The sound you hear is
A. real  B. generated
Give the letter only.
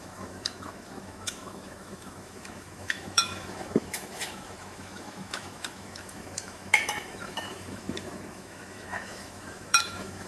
B